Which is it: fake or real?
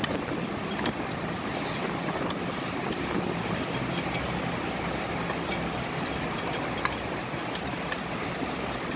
real